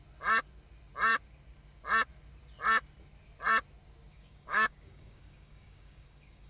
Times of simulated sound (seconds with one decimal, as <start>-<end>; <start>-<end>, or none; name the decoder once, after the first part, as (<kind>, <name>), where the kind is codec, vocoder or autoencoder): 4.1-6.5 (codec, DAC)